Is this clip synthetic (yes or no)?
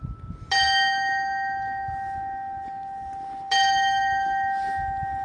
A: no